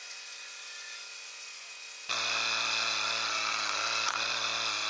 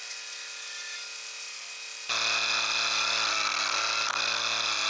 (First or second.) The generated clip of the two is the first